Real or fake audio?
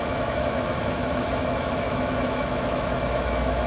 fake